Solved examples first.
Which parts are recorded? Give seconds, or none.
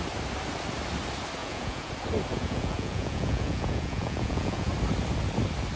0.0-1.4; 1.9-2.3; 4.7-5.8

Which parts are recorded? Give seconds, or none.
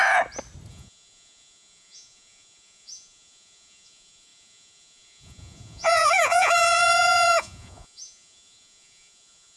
0.0-0.7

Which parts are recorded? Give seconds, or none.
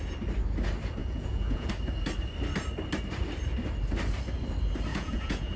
0.0-1.0; 1.7-4.9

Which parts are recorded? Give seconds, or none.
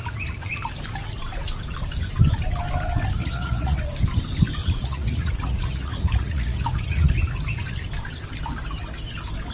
0.0-3.2; 3.9-4.6; 7.1-9.5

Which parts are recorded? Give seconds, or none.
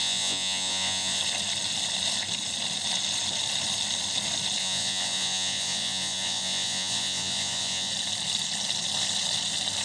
1.2-4.6; 7.9-9.8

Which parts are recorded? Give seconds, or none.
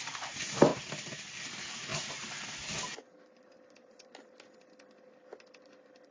0.0-6.1